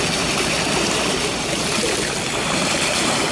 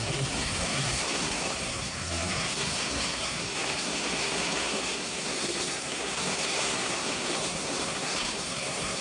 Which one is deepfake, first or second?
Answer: second